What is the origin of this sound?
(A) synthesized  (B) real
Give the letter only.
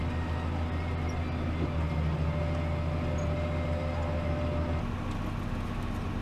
B